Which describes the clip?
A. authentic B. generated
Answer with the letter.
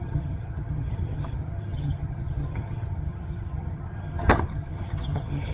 B